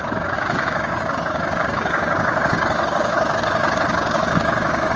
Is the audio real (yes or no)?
no